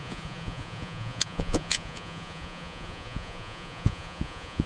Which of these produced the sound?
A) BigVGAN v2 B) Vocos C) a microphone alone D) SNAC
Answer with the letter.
B